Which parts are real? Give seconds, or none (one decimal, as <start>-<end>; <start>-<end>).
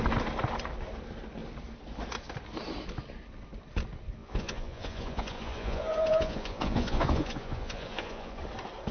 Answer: 0.0-4.2; 8.4-8.9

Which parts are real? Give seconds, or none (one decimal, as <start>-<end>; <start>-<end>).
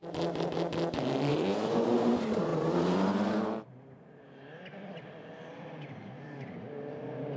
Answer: 0.0-1.3; 2.1-7.4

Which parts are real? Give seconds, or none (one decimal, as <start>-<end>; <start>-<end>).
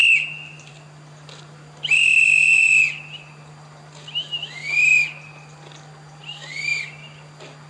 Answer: 0.0-7.7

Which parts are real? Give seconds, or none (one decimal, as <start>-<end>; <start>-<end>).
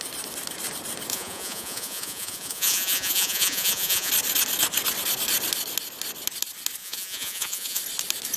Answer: 0.0-1.1; 4.1-6.8; 7.8-8.4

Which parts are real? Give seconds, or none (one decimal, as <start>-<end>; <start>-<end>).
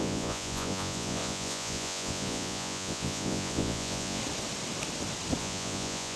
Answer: 4.2-5.4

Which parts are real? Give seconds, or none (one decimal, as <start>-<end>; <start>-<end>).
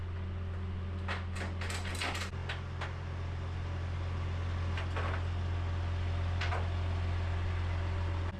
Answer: 0.0-8.4